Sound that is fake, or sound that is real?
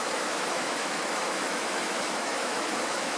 fake